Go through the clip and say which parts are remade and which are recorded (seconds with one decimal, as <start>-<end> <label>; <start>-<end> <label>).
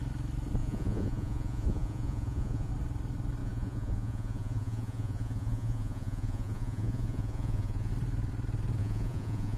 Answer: 0.0-0.6 recorded; 0.6-2.7 remade; 2.7-3.4 recorded; 3.4-7.9 remade; 7.9-8.8 recorded; 8.8-9.6 remade